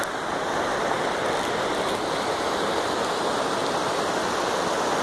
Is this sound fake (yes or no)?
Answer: no